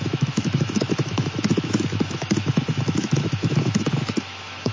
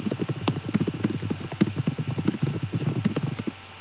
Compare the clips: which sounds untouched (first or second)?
second